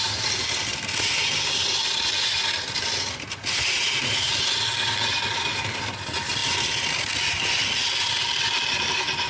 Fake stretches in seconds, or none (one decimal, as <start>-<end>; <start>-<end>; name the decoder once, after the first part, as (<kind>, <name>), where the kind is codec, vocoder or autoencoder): none